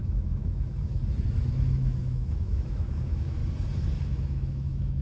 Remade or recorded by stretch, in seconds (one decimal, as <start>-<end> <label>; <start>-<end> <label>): 0.0-1.0 remade; 1.0-1.5 recorded; 1.5-3.4 remade; 3.4-4.0 recorded; 4.0-5.0 remade